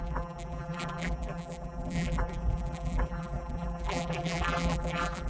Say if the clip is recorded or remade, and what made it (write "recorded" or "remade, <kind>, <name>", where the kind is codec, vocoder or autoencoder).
remade, vocoder, BigVGAN v2